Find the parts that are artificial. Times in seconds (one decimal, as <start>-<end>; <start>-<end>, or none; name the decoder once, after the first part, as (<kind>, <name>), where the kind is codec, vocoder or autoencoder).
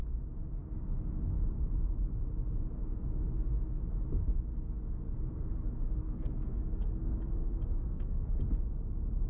6.0-8.4 (codec, SNAC)